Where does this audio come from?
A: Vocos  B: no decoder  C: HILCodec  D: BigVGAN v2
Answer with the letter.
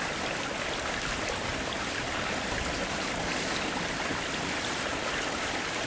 B